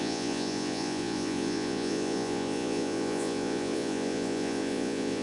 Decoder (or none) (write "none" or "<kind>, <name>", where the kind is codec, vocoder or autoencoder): vocoder, Vocos